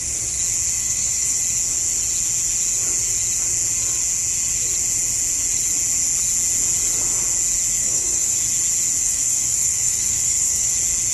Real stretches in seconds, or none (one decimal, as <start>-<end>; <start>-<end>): 0.0-0.8; 1.4-7.8; 8.4-9.0; 10.7-11.1